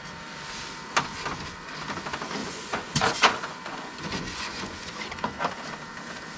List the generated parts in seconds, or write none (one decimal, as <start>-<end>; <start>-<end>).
2.4-5.3